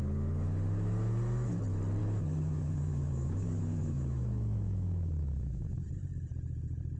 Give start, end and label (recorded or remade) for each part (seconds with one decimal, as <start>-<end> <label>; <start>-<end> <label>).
0.0-1.6 remade; 1.6-2.0 recorded; 2.0-5.8 remade; 5.8-7.0 recorded